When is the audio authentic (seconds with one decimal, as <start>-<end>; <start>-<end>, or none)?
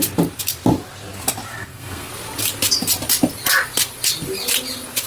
0.0-1.5; 2.1-5.1